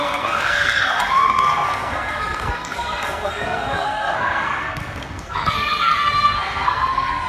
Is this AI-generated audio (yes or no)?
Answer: yes